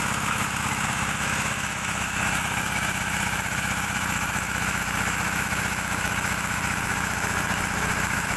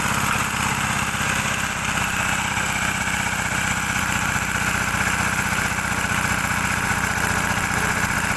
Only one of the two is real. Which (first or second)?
second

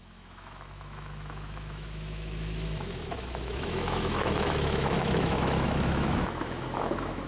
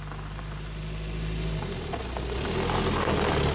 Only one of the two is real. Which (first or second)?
second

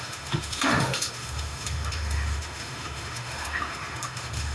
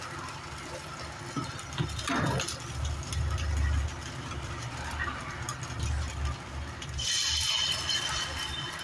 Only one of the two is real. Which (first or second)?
second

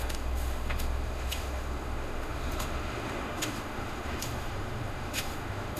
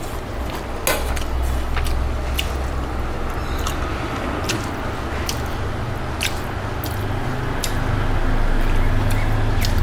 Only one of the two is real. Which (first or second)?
second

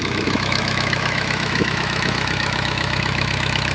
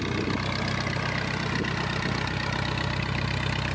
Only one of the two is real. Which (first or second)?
second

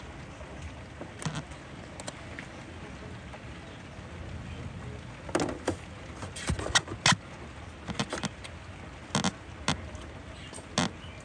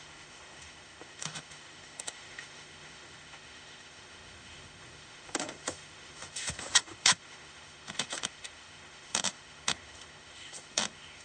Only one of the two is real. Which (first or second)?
first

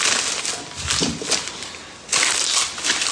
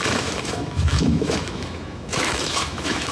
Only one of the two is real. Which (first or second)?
first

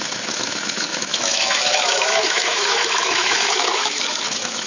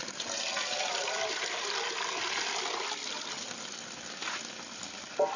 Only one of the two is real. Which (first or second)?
second